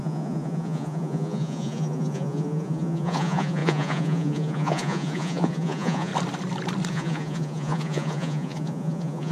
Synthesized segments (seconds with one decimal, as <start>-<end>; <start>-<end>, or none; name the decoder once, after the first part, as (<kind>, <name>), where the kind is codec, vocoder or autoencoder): 0.0-6.1 (vocoder, Vocos); 6.9-9.3